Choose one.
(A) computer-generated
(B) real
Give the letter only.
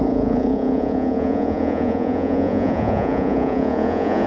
A